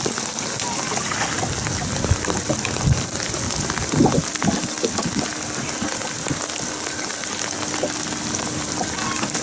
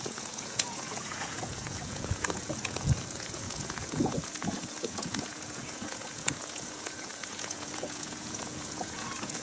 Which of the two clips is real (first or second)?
first